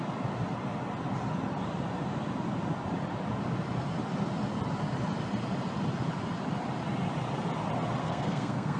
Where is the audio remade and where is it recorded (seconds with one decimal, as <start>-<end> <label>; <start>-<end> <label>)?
0.0-8.0 recorded; 8.0-8.8 remade